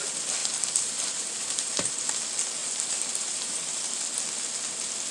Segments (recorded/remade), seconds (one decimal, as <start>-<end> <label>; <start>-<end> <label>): 0.0-0.4 recorded; 0.4-2.1 remade; 2.1-2.6 recorded; 2.6-4.0 remade; 4.0-5.1 recorded